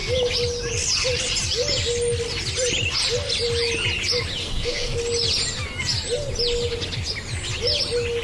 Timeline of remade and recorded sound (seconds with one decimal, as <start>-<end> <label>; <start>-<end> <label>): 0.0-4.4 recorded; 4.4-5.0 remade; 5.0-8.2 recorded